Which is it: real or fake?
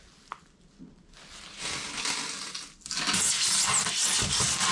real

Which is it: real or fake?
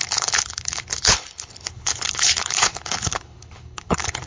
fake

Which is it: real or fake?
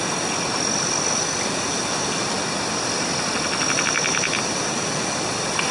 real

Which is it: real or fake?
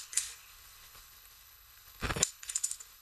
fake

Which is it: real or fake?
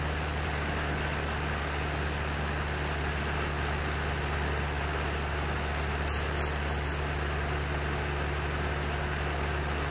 real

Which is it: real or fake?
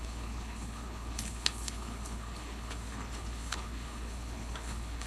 fake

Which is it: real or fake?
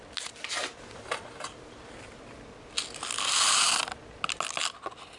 real